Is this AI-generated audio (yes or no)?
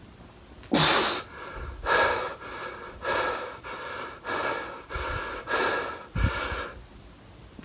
no